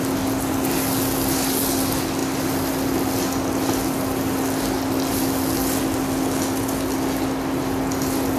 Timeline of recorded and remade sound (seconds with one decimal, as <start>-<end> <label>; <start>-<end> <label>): 0.0-8.4 recorded